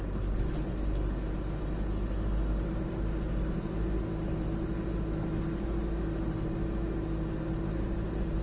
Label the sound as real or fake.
real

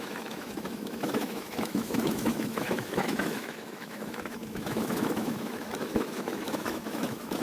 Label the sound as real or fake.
fake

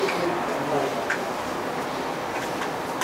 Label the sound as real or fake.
real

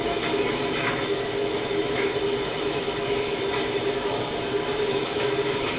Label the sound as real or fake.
fake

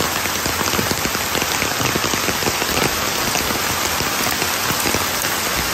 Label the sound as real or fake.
real